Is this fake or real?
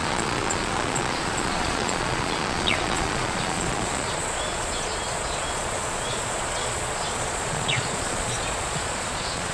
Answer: fake